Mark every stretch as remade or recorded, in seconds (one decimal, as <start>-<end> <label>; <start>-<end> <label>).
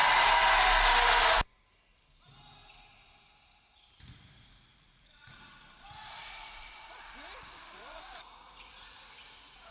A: 0.0-4.0 recorded; 4.0-9.7 remade